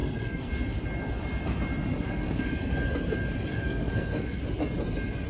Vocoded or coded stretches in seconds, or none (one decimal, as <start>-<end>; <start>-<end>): 0.0-0.5; 1.9-2.5; 3.5-4.4